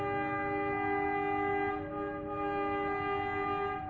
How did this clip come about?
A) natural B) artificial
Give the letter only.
A